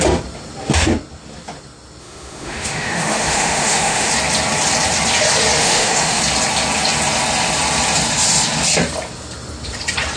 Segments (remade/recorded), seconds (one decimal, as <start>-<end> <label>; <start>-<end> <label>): 0.0-2.0 recorded; 2.0-4.1 remade; 4.1-5.6 recorded; 5.6-6.2 remade; 6.2-10.2 recorded